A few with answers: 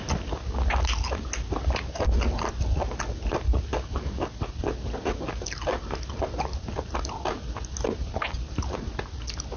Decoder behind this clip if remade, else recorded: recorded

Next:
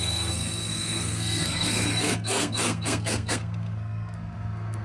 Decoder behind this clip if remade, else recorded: remade, codec, SNAC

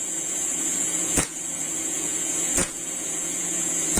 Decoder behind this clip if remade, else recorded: remade, vocoder, Vocos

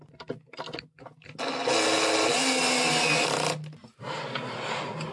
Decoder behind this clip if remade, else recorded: recorded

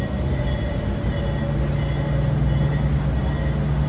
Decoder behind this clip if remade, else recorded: recorded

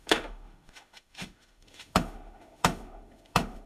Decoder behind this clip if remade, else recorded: remade, autoencoder, DAC-VAE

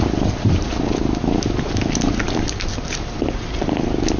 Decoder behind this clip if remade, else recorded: recorded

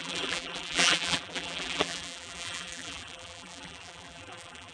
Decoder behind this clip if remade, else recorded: remade, vocoder, BigVGAN v2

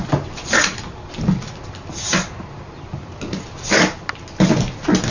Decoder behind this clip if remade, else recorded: recorded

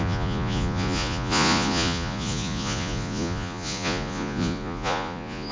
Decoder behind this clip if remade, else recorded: remade, vocoder, Vocos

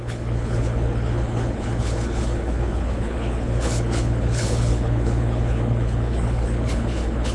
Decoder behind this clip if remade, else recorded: remade, codec, HILCodec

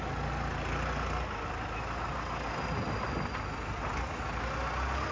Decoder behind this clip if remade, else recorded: recorded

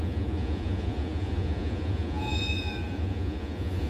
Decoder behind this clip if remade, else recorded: remade, vocoder, Vocos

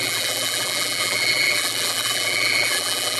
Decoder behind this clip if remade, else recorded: remade, vocoder, BigVGAN v2